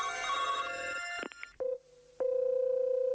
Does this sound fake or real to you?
real